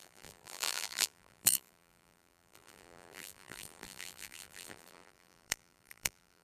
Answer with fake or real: fake